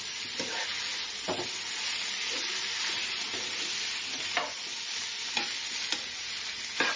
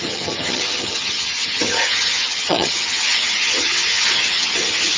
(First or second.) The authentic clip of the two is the first